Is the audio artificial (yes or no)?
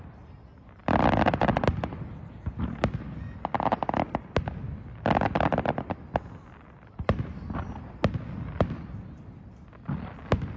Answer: no